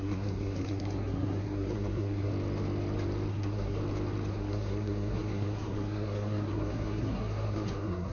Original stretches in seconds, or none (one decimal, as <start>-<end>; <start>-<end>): 2.3-3.3; 3.8-4.3